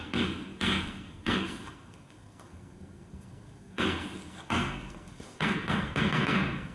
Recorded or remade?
remade